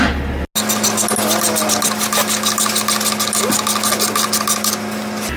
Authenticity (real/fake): real